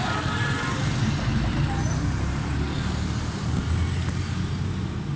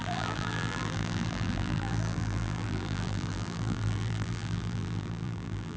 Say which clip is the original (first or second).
first